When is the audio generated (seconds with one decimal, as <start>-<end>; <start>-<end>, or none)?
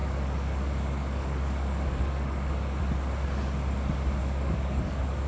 0.0-2.8; 4.2-5.3